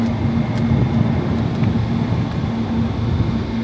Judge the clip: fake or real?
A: real